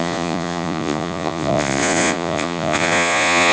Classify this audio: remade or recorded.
remade